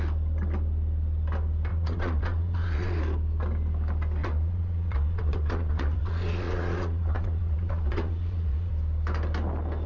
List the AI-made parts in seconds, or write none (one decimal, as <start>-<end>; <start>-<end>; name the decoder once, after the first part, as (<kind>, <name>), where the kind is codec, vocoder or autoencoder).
1.7-3.0 (vocoder, Vocos); 4.2-8.7

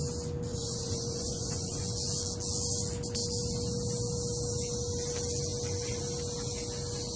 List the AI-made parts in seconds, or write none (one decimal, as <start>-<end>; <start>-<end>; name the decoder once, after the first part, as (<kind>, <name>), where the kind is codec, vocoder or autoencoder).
0.5-1.8 (vocoder, Vocos)

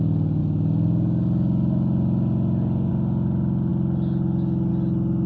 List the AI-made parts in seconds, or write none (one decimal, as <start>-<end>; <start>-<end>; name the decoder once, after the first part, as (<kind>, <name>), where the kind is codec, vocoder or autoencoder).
none

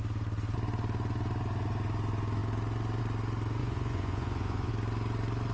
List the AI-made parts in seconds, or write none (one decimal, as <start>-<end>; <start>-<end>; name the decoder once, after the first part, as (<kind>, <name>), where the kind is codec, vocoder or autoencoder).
3.6-4.7 (vocoder, Vocos)

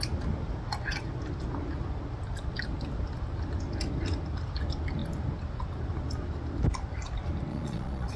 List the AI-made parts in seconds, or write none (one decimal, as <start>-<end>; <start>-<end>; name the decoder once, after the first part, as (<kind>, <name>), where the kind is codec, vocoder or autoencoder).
7.5-8.2 (vocoder, Vocos)

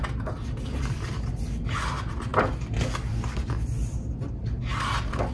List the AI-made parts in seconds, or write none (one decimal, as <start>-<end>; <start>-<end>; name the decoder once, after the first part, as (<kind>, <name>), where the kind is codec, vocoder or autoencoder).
none